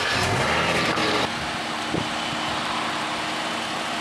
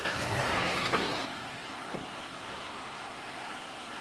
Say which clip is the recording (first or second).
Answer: first